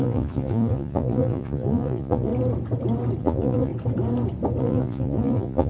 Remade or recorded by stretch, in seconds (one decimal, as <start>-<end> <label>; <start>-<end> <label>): 0.0-2.3 remade; 2.3-3.2 recorded; 3.2-3.7 remade; 3.7-4.6 recorded; 4.6-5.7 remade